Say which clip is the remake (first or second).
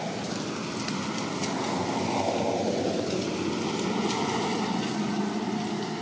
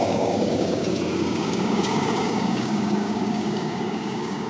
second